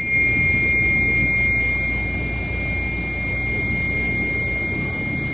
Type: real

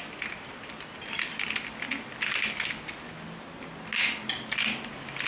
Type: real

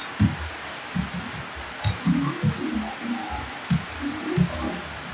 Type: real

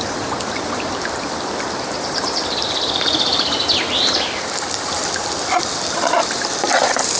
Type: fake